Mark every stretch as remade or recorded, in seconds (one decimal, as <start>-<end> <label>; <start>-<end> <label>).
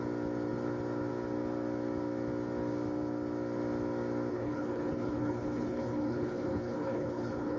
0.0-4.3 recorded; 4.3-7.6 remade